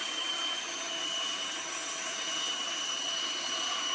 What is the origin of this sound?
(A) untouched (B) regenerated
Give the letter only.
B